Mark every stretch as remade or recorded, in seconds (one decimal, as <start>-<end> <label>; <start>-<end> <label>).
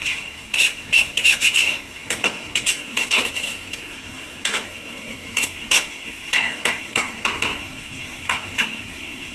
0.0-9.3 remade